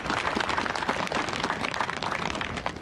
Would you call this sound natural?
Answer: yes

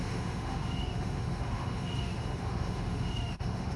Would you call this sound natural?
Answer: no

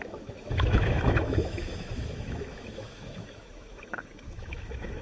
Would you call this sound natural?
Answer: no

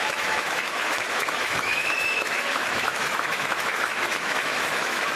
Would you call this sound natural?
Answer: no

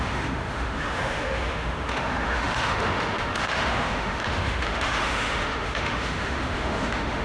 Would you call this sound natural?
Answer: no